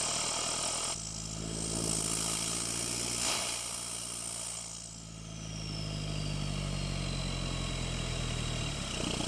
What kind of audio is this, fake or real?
real